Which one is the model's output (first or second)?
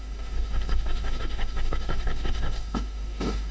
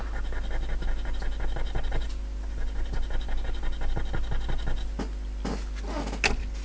first